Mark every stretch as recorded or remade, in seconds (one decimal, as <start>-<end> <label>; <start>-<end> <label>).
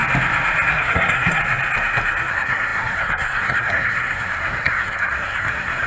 0.0-0.7 recorded; 0.7-1.4 remade; 1.4-2.3 recorded; 2.3-5.9 remade